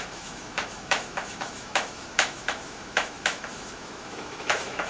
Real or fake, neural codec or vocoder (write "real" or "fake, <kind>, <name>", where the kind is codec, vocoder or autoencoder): fake, autoencoder, DAC-VAE